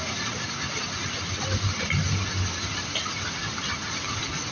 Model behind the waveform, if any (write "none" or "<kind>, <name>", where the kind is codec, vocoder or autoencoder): none